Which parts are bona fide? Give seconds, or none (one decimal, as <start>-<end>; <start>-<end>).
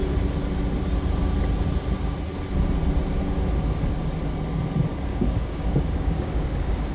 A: 0.0-5.1